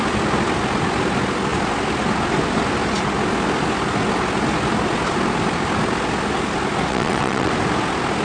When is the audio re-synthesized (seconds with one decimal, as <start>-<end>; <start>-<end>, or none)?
6.9-7.5